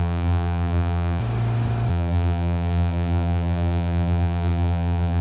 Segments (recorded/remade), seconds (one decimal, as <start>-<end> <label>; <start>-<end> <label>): 0.0-1.2 remade; 1.2-1.9 recorded; 1.9-5.2 remade